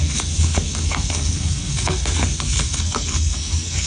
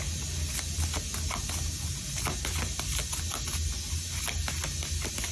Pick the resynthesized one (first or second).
first